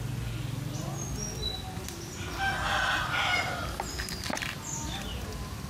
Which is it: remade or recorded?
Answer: recorded